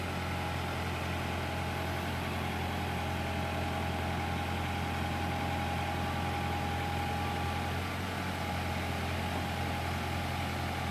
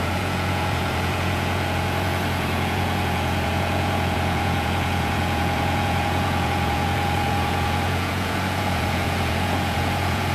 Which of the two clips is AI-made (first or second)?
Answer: second